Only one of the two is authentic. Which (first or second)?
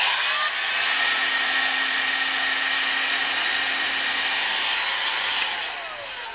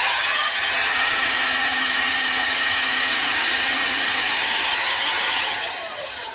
first